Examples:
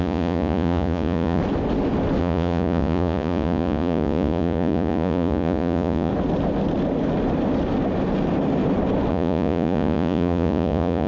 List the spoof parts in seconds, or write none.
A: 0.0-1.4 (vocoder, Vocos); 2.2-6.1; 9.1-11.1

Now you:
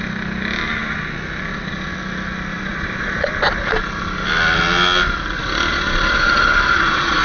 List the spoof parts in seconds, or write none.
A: 2.5-3.3 (vocoder, Vocos); 5.7-7.2